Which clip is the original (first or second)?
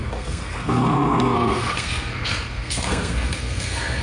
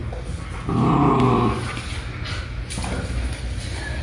second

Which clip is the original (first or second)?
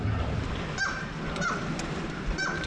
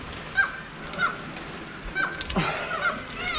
second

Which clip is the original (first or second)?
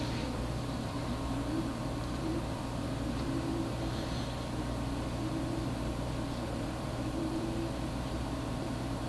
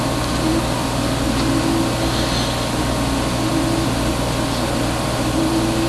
second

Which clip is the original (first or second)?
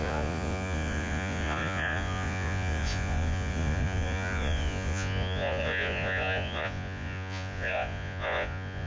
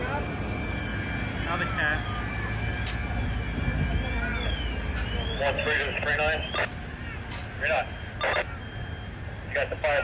second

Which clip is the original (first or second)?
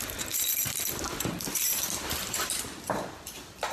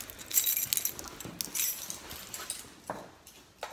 second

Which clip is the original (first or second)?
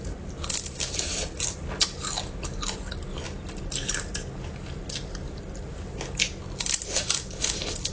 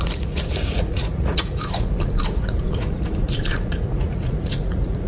first